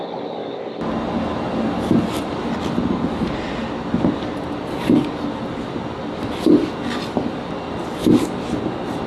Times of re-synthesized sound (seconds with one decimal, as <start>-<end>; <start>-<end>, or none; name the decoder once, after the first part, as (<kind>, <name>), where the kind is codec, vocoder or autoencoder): none